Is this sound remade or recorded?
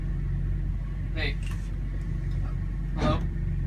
recorded